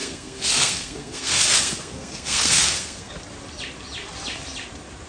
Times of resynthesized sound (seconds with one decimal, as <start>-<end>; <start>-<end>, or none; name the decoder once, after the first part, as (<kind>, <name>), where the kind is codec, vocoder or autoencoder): 0.0-3.1 (codec, SNAC)